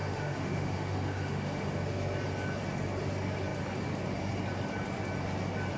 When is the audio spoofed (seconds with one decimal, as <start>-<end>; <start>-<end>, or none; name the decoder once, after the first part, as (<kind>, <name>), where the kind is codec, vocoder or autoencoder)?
0.0-1.8 (autoencoder, DAC-VAE)